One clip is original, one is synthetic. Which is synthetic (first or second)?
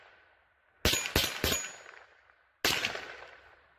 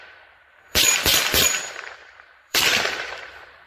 second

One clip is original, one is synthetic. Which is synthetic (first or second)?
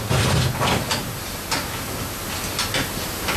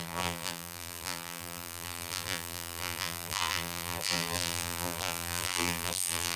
second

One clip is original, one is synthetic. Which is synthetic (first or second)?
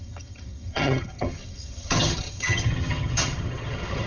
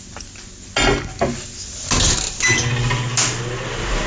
first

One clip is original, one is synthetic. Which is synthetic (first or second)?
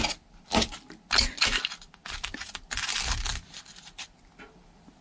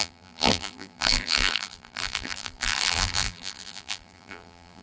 second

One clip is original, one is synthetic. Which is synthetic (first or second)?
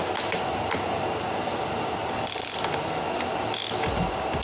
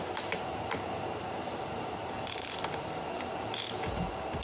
second